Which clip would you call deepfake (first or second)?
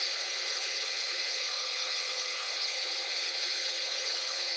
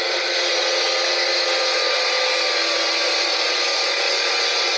first